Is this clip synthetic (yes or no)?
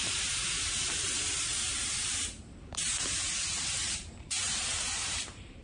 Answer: yes